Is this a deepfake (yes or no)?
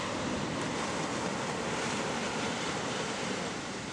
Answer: yes